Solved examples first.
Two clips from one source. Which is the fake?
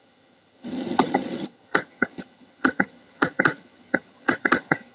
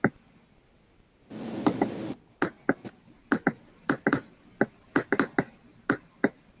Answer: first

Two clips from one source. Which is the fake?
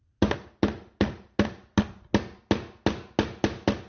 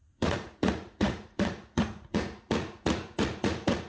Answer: second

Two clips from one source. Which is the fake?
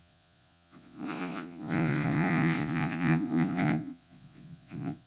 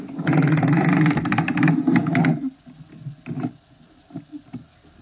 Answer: first